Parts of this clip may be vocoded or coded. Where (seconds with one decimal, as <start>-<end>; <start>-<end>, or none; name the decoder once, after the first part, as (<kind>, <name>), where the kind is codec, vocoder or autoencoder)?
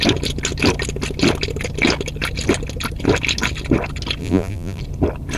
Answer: 4.2-4.8 (vocoder, BigVGAN v2)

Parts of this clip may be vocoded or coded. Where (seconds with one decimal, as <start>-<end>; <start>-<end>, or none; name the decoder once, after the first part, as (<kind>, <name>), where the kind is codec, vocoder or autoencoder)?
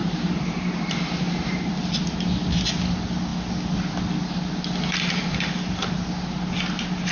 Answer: 0.0-1.7 (vocoder, BigVGAN v2)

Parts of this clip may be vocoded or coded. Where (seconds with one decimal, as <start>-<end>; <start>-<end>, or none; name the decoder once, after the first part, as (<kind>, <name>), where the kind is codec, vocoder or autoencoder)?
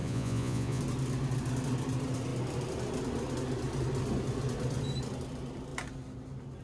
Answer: 0.0-0.8 (vocoder, Vocos)